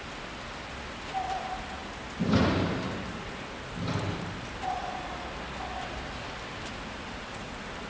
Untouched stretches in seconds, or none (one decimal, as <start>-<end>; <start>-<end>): 0.0-7.9